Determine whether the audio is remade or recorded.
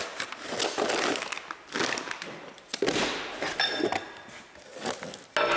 recorded